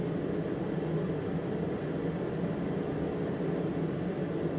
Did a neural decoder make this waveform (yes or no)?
no